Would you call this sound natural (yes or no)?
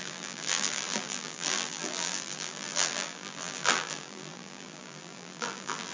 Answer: no